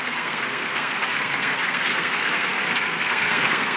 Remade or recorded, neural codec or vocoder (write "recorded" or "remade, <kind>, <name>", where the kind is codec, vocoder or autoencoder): remade, codec, SNAC